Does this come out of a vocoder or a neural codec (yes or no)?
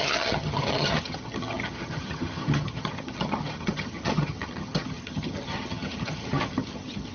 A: yes